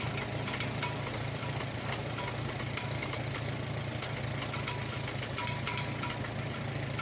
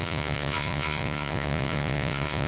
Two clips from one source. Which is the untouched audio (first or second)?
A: first